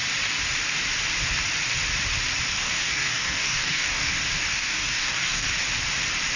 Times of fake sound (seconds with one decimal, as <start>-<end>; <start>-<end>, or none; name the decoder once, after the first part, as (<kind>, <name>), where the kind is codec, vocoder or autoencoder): 2.5-4.1 (codec, DAC); 4.5-5.5